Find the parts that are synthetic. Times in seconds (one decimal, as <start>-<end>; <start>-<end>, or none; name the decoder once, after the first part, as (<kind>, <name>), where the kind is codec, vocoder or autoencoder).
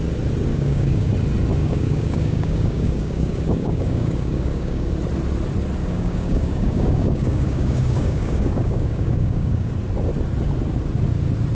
0.5-1.1 (codec, DAC); 1.6-4.9; 5.8-9.7